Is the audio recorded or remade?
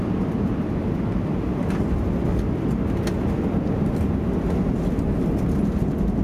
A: recorded